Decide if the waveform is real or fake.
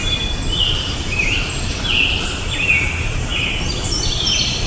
real